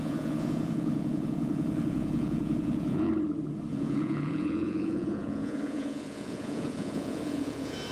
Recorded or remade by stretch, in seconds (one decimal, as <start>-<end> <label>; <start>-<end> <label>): 0.0-3.1 remade; 3.1-3.7 recorded; 3.7-7.9 remade